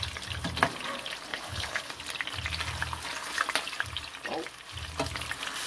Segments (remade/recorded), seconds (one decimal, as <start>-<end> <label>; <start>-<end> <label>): 0.0-1.3 recorded; 1.3-1.9 remade; 1.9-5.7 recorded